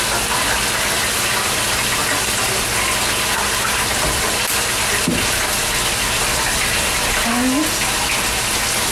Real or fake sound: real